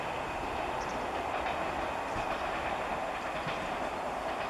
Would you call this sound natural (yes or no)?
yes